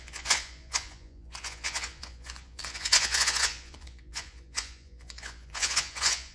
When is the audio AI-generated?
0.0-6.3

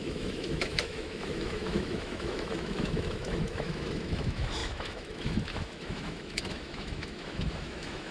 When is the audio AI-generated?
0.0-8.1